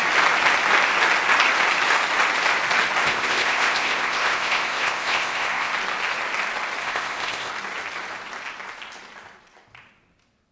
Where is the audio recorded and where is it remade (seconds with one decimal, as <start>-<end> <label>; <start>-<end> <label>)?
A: 0.0-3.0 recorded; 3.0-5.7 remade; 5.7-6.8 recorded; 6.8-7.5 remade; 7.5-10.5 recorded